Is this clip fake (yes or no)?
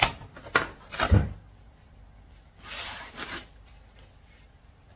no